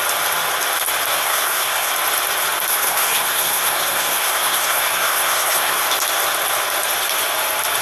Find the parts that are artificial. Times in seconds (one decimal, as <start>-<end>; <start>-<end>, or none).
1.1-1.9; 2.7-5.8